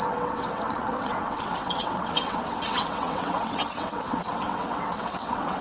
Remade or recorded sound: remade